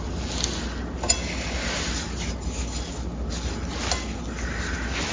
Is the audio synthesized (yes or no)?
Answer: no